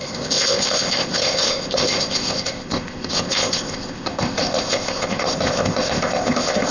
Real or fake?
fake